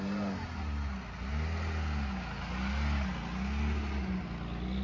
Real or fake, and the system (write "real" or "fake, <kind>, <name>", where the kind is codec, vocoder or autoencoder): real